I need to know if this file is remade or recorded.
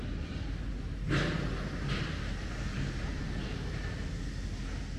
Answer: recorded